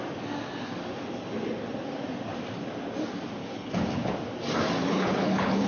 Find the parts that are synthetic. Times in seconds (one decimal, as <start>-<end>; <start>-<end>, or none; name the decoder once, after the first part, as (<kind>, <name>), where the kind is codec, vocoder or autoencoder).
3.4-4.1 (codec, HILCodec); 4.8-5.7